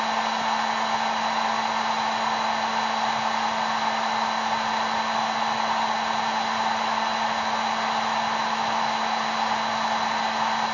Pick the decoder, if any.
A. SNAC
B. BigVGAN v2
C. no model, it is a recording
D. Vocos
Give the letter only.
C